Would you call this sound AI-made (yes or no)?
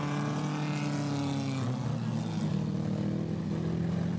no